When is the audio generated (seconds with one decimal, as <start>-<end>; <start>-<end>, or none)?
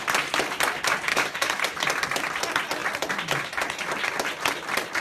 1.1-1.6